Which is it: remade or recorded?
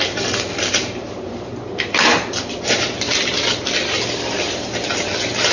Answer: remade